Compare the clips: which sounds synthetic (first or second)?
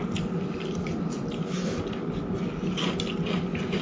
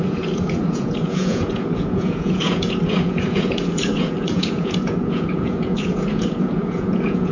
second